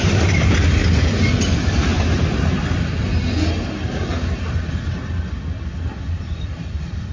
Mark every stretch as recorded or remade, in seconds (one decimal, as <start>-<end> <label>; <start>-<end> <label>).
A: 0.0-0.8 remade; 0.8-1.3 recorded; 1.3-1.9 remade; 1.9-6.2 recorded; 6.2-7.1 remade